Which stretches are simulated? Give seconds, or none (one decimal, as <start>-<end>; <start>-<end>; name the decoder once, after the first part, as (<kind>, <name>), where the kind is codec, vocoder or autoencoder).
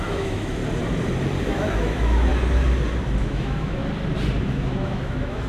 0.0-0.6 (autoencoder, DAC-VAE); 1.4-2.3; 3.2-3.8; 4.4-5.5